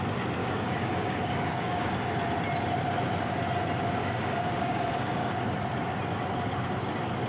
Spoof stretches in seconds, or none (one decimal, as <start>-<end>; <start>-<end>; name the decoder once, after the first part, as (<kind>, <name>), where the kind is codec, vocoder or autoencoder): 0.4-1.9 (codec, DAC); 4.0-5.4